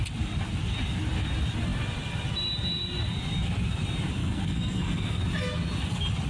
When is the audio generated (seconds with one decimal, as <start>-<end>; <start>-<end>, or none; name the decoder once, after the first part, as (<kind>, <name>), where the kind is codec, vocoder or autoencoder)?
4.2-5.2 (codec, SNAC)